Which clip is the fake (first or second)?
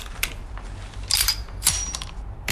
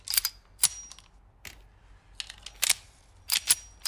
first